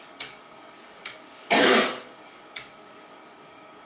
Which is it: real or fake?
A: fake